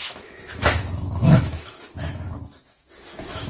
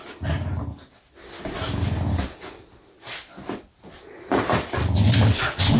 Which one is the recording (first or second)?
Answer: second